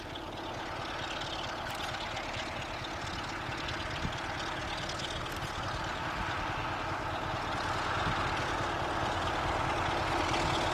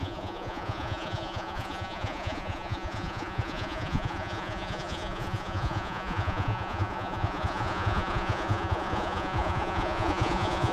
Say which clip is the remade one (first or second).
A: second